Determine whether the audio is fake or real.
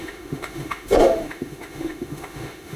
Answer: fake